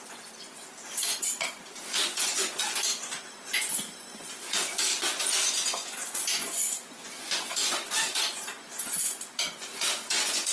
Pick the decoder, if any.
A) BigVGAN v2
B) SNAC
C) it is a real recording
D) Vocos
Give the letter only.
D